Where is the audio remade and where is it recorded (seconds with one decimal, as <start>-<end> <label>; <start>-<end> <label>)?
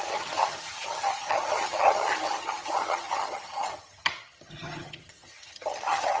0.0-6.2 remade